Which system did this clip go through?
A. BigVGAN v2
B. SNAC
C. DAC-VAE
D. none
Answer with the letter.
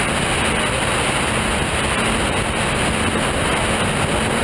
D